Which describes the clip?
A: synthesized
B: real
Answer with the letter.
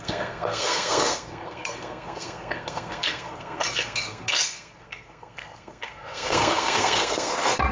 A